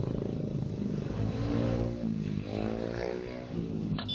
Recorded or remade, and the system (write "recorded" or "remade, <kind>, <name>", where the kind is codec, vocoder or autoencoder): remade, codec, DAC